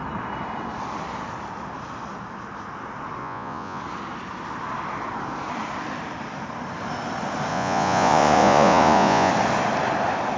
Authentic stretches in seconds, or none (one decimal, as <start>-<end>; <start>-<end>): 0.0-3.2; 3.8-7.5; 9.3-10.4